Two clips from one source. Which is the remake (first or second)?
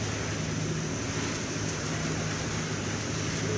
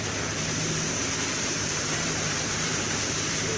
second